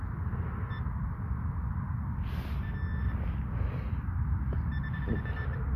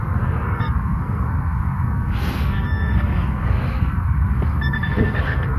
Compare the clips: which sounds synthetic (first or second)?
second